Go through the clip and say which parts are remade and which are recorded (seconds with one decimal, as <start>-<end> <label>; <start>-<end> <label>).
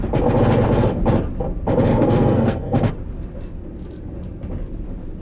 0.0-1.9 recorded; 1.9-2.9 remade; 2.9-5.2 recorded